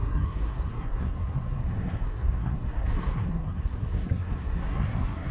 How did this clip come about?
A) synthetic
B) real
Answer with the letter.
A